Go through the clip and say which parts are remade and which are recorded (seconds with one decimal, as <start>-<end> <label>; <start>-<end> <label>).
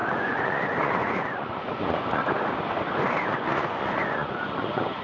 0.0-2.2 remade; 2.2-3.2 recorded; 3.2-5.0 remade